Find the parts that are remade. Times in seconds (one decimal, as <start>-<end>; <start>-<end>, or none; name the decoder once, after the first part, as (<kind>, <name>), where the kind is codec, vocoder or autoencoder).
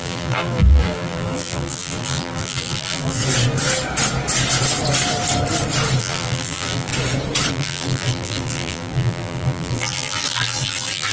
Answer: 0.0-3.2 (vocoder, BigVGAN v2); 6.0-6.9; 7.5-11.1